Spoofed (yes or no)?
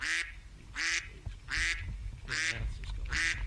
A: no